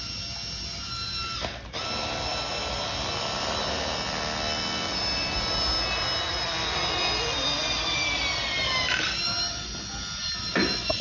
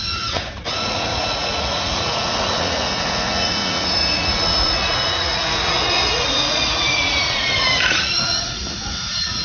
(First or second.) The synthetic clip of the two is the second